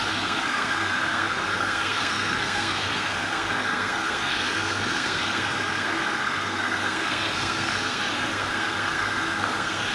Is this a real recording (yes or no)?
no